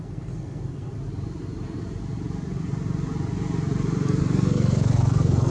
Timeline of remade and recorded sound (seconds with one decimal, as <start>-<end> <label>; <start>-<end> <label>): 0.0-0.9 remade; 0.9-4.2 recorded; 4.2-5.5 remade

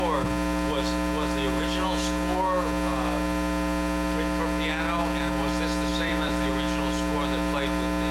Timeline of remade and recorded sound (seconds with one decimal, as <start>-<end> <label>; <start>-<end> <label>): 0.0-5.9 recorded; 5.9-6.5 remade; 6.5-8.1 recorded

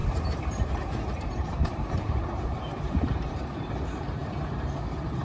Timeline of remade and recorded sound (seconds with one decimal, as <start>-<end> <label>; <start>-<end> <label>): 0.0-4.2 remade; 4.2-5.2 recorded

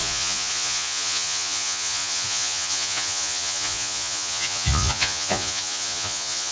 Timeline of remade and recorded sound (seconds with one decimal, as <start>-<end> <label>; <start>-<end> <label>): 0.0-6.5 remade

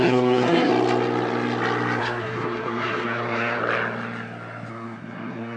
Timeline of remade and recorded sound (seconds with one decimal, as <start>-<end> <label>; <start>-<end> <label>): 0.0-0.7 remade; 0.7-2.0 recorded; 2.0-3.6 remade; 3.6-4.7 recorded; 4.7-5.6 remade

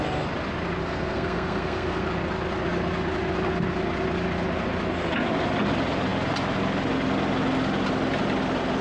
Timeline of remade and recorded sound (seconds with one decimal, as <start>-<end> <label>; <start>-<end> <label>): 0.0-0.8 recorded; 0.8-2.1 remade; 2.1-8.8 recorded